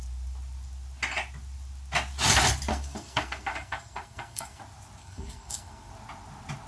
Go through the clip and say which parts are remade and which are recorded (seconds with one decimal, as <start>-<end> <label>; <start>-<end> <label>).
0.0-2.7 recorded; 2.7-4.6 remade; 4.6-5.0 recorded; 5.0-5.9 remade; 5.9-6.7 recorded